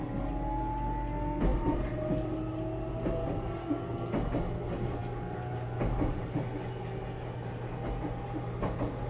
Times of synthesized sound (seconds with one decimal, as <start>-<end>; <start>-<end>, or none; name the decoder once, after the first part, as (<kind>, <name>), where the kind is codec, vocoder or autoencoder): 3.6-4.1 (codec, DAC)